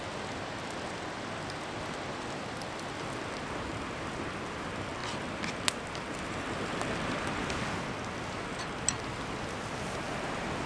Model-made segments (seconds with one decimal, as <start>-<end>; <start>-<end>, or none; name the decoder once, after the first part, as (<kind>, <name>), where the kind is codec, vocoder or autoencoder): none